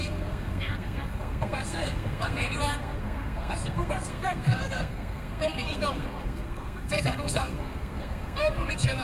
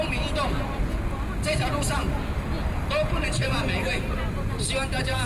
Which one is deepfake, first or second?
first